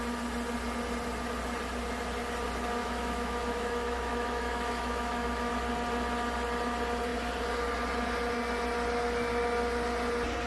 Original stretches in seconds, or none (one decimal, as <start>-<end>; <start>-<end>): 0.0-2.8; 5.5-10.5